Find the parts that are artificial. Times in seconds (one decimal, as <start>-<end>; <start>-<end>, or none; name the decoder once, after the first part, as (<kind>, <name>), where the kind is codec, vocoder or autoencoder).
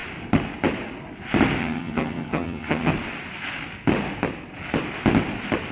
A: 1.6-2.9 (vocoder, HiFi-GAN)